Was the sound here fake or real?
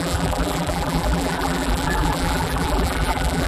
fake